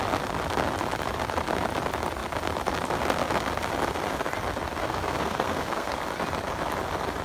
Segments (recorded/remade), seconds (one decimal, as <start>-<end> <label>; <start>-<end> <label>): 0.0-4.8 recorded; 4.8-5.9 remade; 5.9-7.2 recorded